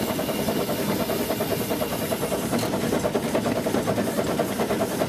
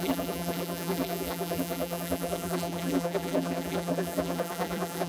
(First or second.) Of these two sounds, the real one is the first